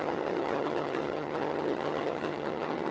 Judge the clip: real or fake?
fake